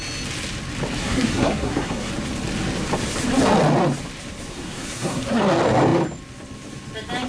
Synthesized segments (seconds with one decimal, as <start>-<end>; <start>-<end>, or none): 1.0-2.1; 4.5-5.4